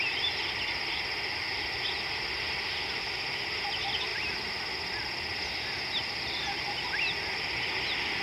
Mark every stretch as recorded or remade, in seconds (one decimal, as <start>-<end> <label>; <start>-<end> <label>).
0.0-8.2 recorded